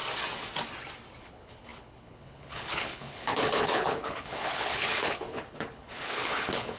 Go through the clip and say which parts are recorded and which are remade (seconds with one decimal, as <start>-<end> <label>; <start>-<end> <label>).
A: 0.0-1.2 recorded; 1.2-6.8 remade